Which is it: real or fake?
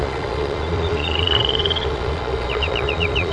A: fake